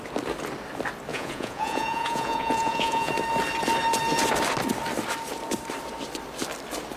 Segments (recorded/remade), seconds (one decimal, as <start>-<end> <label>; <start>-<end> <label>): 0.0-1.1 recorded; 1.1-3.1 remade; 3.1-7.0 recorded